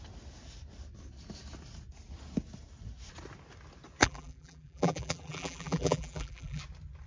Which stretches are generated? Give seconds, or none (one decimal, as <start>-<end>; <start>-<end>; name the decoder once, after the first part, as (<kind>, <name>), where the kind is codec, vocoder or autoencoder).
4.0-6.6 (vocoder, BigVGAN v2)